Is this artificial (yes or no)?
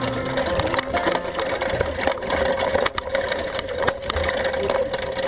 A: no